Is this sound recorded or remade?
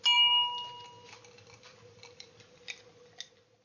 recorded